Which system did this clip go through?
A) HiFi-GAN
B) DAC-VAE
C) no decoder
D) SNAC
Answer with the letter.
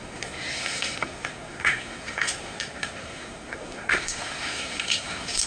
D